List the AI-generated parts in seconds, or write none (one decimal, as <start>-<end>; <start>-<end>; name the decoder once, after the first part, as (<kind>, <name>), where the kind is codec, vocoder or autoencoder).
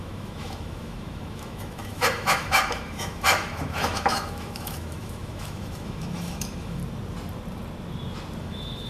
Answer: 0.0-6.8 (autoencoder, DAC-VAE); 8.4-8.9